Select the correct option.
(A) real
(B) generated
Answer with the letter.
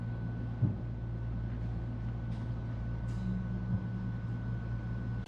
A